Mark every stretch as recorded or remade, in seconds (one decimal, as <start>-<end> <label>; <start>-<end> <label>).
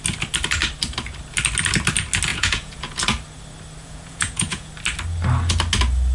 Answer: 0.0-2.3 recorded; 2.3-3.0 remade; 3.0-3.8 recorded; 3.8-4.7 remade; 4.7-6.1 recorded